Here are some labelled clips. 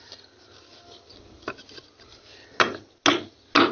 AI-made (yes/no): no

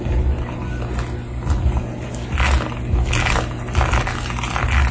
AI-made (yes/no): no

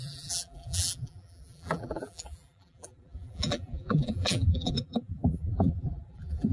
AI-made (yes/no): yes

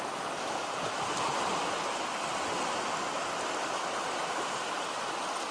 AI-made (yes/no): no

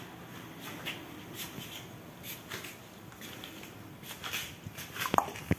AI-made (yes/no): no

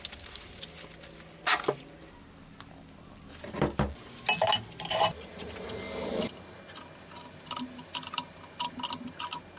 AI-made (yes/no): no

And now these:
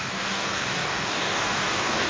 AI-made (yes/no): yes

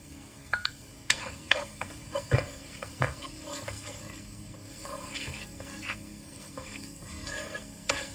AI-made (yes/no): yes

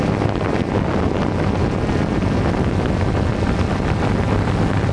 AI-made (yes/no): no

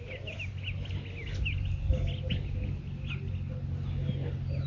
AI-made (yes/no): no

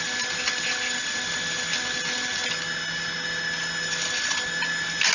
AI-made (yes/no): no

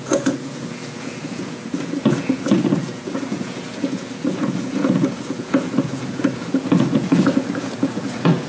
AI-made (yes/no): yes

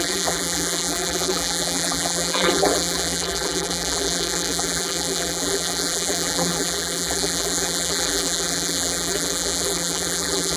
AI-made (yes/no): yes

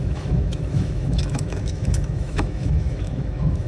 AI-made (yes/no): yes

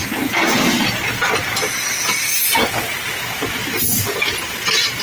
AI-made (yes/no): no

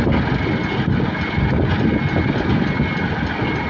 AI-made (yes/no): no